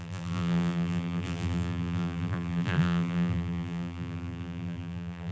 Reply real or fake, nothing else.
fake